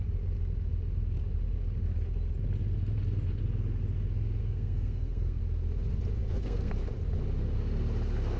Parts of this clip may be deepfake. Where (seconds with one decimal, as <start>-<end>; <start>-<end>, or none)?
4.4-5.4; 6.2-6.7